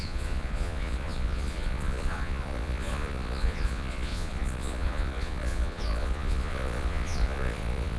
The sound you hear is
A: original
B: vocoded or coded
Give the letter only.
B